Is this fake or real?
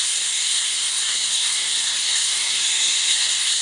fake